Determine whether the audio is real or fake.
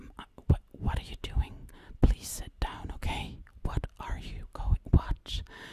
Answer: real